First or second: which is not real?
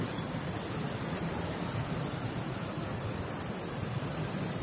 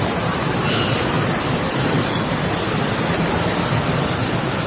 first